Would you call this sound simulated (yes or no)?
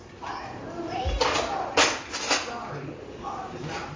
no